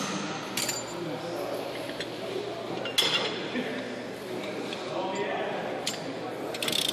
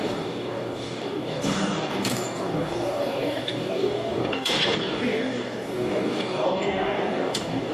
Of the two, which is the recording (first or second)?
first